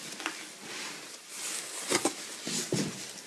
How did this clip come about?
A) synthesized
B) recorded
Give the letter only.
B